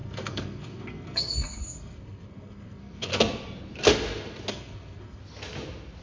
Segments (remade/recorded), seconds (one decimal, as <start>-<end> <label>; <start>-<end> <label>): 0.0-3.1 remade; 3.1-4.5 recorded; 4.5-5.2 remade; 5.2-6.0 recorded